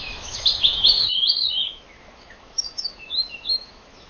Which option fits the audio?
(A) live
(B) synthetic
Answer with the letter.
B